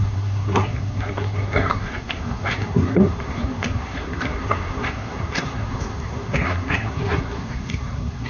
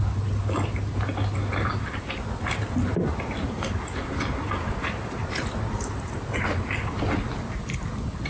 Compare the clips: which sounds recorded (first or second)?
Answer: second